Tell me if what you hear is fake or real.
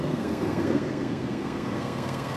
fake